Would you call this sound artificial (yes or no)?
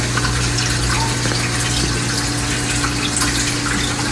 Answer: no